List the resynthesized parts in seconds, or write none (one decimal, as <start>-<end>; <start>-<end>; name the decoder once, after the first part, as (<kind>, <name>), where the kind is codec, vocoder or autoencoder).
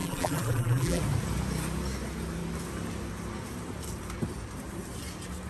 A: 0.0-1.0 (vocoder, BigVGAN v2)